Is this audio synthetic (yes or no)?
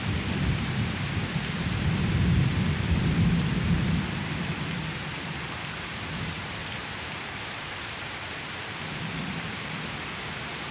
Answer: yes